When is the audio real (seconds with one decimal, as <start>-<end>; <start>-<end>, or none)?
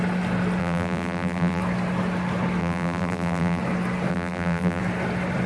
0.0-0.6; 1.6-2.6; 3.6-4.1; 4.8-5.5